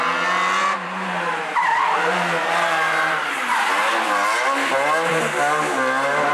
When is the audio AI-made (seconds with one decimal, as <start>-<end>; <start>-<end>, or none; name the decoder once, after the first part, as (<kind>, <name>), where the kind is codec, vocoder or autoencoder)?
0.6-3.3 (vocoder, BigVGAN v2); 5.1-5.6